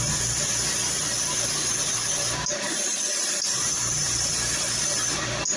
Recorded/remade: recorded